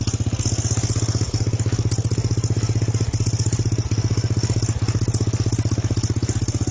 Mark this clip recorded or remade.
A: recorded